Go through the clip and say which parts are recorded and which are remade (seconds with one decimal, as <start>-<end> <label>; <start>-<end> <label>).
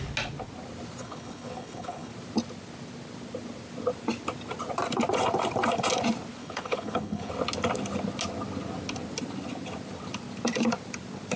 0.0-1.0 recorded; 1.0-2.1 remade; 2.1-6.4 recorded; 6.4-7.3 remade; 7.3-11.4 recorded